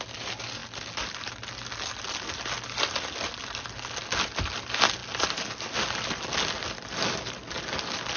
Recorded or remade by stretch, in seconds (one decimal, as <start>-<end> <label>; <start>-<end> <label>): 0.0-8.2 recorded